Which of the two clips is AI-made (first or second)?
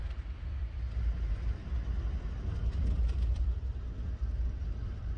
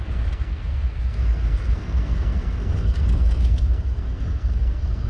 second